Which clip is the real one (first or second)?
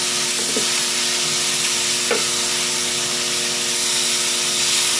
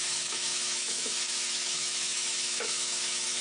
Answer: first